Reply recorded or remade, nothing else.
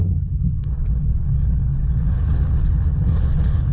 remade